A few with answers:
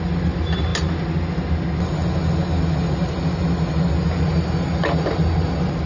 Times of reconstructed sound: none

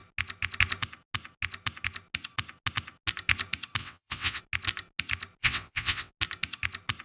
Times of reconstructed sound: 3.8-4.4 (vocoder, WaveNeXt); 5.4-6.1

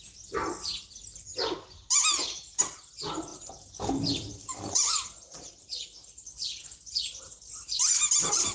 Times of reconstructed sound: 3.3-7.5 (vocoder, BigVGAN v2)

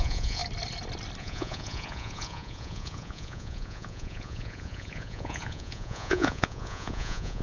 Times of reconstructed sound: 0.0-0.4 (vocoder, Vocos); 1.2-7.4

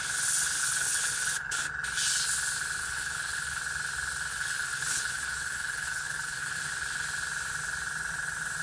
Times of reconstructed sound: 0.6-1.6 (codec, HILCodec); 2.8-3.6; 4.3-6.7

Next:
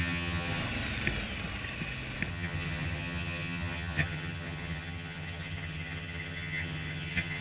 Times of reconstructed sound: 0.0-0.6 (vocoder, HiFi-GAN); 2.3-7.4

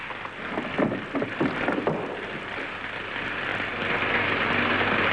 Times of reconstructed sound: none

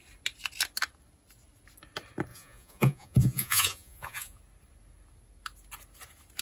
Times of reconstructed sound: 2.3-4.4 (vocoder, Vocos)